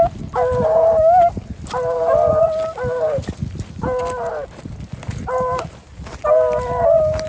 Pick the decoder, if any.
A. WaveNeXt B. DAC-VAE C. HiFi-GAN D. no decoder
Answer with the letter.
D